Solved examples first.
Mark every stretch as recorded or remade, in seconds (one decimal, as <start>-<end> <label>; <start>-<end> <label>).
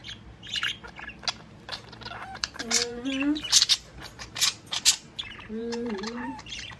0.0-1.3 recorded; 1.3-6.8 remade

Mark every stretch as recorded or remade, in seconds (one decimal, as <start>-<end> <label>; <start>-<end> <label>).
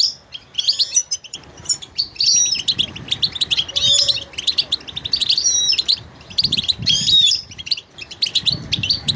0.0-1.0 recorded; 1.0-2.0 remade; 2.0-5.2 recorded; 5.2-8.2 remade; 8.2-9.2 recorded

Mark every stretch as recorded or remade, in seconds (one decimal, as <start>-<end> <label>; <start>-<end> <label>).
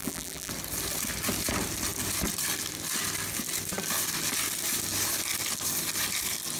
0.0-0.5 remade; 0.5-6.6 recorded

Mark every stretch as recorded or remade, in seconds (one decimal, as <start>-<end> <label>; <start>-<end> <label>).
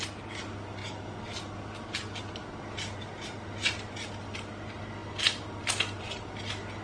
0.0-6.8 recorded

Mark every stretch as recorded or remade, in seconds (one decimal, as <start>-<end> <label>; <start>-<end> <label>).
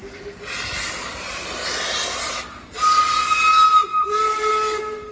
0.0-3.9 recorded; 3.9-4.5 remade; 4.5-5.1 recorded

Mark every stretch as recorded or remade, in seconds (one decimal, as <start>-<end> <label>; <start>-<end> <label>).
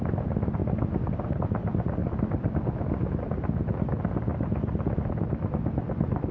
0.0-6.3 recorded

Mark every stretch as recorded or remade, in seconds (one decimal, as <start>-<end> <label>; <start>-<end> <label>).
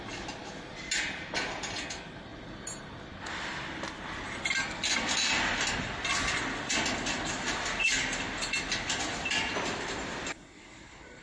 0.0-11.2 recorded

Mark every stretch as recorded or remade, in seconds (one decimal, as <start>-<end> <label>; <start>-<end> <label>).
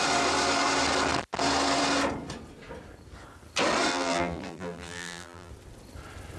0.0-3.9 recorded; 3.9-5.5 remade; 5.5-6.4 recorded